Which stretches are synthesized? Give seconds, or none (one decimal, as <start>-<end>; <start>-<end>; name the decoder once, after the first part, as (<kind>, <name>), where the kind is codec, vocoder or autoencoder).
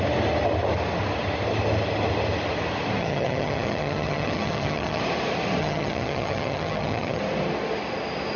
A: 3.0-5.0 (vocoder, HiFi-GAN); 5.6-7.2